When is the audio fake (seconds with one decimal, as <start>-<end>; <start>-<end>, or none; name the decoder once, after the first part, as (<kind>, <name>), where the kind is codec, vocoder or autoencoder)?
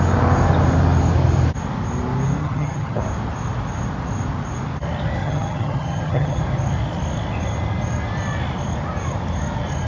2.4-3.0 (vocoder, HiFi-GAN); 5.2-6.4